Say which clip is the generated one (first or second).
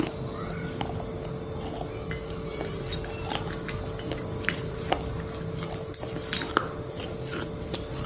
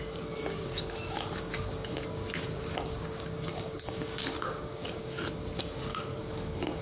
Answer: second